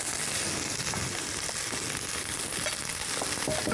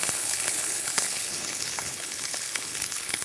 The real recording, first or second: first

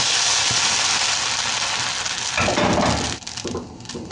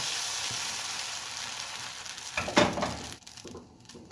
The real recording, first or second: first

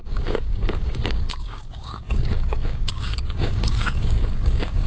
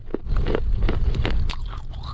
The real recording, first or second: second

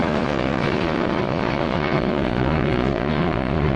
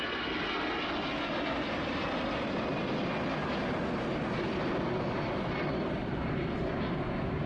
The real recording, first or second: second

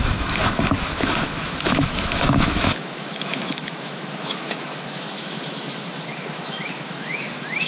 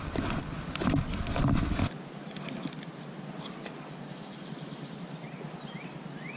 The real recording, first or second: second